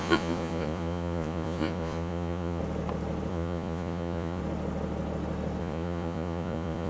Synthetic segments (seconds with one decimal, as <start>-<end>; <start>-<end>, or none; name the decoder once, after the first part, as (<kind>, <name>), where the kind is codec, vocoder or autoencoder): 0.0-2.6 (vocoder, Vocos); 3.3-4.4; 5.6-6.9